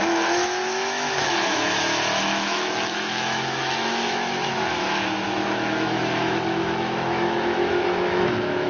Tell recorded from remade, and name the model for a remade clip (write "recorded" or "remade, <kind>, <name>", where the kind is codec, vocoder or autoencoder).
remade, autoencoder, DAC-VAE